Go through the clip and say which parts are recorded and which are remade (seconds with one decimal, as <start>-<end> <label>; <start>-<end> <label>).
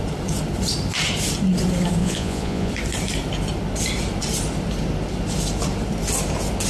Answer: 0.0-2.0 recorded; 2.0-2.7 remade; 2.7-6.7 recorded